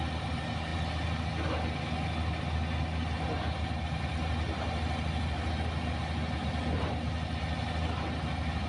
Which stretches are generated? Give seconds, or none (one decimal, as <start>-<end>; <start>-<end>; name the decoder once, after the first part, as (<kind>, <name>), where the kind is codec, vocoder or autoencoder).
none